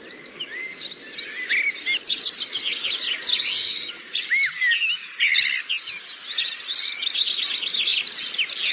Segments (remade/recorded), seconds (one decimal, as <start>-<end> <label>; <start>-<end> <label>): 0.0-8.7 recorded